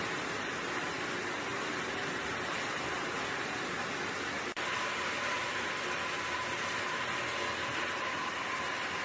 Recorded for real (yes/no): yes